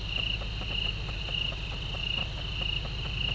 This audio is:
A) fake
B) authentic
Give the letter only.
B